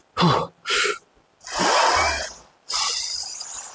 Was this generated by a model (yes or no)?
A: no